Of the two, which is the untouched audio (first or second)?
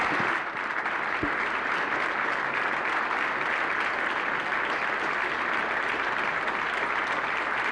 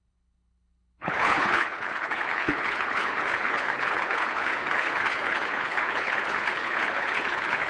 first